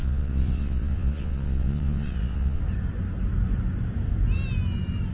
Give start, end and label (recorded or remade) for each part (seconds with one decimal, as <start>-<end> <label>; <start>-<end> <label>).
0.0-2.6 remade; 2.6-5.1 recorded